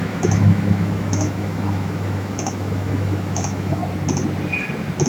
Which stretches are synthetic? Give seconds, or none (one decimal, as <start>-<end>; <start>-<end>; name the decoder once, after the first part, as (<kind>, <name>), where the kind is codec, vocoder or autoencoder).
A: 0.0-3.8 (autoencoder, DAC-VAE)